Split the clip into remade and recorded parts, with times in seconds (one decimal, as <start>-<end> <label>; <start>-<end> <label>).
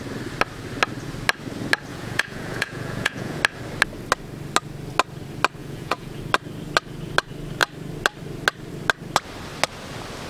0.0-1.9 recorded; 1.9-3.4 remade; 3.4-5.6 recorded; 5.6-6.2 remade; 6.2-10.3 recorded